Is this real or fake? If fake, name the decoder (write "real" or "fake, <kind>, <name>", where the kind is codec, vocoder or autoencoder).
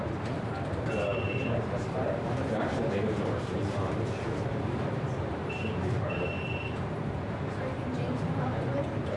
fake, vocoder, BigVGAN v2